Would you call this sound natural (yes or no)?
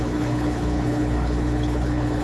no